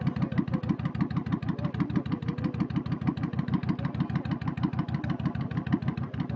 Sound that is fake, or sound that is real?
real